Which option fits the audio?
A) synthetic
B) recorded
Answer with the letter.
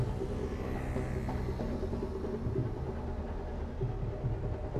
B